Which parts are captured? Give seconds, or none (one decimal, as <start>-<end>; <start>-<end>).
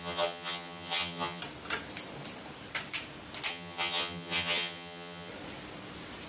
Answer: 1.4-3.5; 5.3-6.3